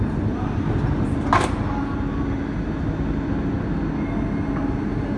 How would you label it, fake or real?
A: real